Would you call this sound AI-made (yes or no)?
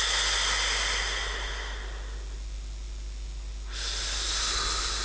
no